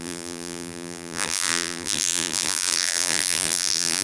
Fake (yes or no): yes